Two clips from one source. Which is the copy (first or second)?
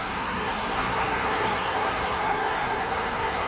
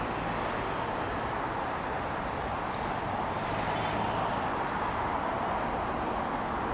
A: first